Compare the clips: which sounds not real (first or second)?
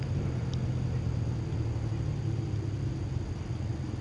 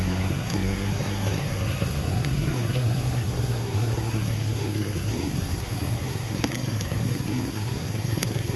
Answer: second